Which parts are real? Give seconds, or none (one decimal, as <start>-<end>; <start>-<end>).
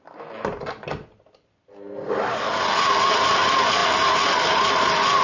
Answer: 0.0-5.2